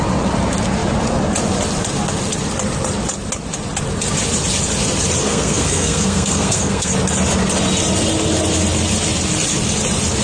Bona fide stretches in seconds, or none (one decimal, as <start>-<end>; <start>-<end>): 0.0-5.2; 6.9-10.2